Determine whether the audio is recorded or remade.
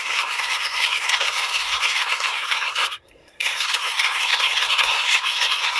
remade